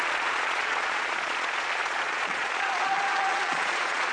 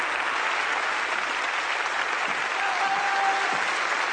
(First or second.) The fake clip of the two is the first